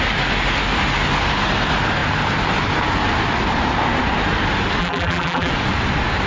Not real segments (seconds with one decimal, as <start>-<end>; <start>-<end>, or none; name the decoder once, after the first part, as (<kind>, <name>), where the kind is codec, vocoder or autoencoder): 4.8-5.5 (vocoder, BigVGAN v2)